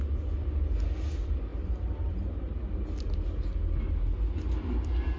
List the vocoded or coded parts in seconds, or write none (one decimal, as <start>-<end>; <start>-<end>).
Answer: none